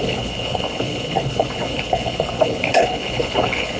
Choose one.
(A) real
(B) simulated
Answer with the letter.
B